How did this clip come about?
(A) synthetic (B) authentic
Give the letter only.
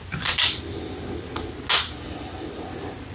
B